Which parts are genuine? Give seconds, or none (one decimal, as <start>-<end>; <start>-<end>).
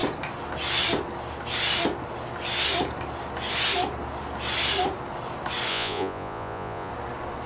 0.0-5.7; 6.9-7.5